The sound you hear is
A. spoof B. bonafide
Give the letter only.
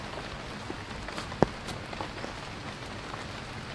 B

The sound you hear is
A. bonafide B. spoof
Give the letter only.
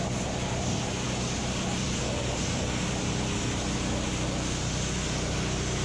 A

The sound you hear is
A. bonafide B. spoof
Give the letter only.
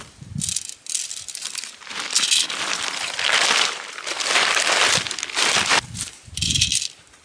A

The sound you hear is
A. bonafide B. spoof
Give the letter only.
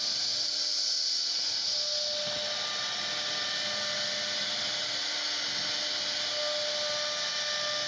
A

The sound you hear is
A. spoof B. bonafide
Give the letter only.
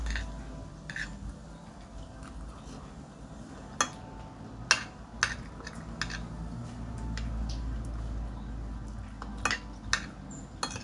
B